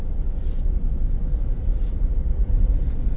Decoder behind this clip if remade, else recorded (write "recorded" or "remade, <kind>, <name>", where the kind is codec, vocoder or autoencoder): recorded